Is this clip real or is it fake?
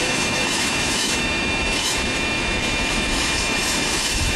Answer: fake